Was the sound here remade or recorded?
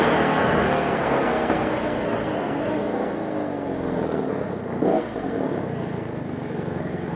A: remade